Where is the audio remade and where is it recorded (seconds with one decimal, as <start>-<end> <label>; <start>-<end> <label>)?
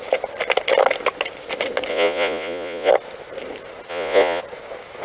0.0-1.9 recorded; 1.9-2.9 remade; 2.9-3.9 recorded; 3.9-4.4 remade; 4.4-5.0 recorded